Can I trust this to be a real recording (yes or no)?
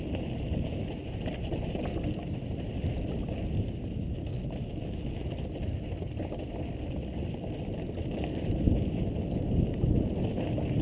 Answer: yes